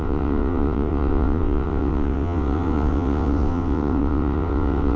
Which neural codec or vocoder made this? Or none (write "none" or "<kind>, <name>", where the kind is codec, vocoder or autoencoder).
vocoder, WaveNeXt